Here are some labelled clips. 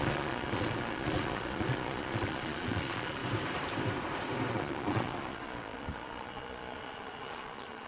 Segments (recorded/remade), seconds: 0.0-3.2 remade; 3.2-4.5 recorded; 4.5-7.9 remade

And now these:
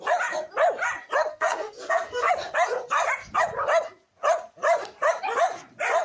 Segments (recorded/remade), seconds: 0.0-1.3 recorded; 1.3-2.3 remade; 2.3-6.0 recorded

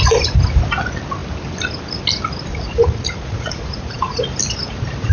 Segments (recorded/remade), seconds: 0.0-2.5 recorded; 2.5-4.2 remade; 4.2-5.1 recorded

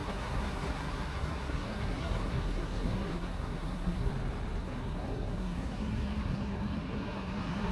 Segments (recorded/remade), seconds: 0.0-4.1 remade; 4.1-4.6 recorded; 4.6-7.7 remade

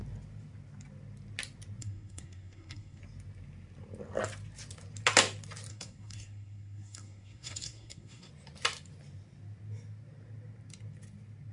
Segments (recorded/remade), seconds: 0.0-1.8 recorded; 1.8-3.0 remade; 3.0-5.7 recorded; 5.7-8.3 remade; 8.3-11.5 recorded